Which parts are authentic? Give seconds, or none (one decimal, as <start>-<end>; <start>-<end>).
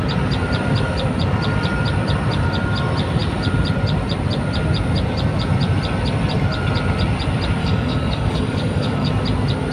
0.0-7.6; 9.1-9.7